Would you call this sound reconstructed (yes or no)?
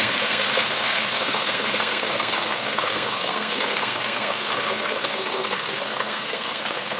yes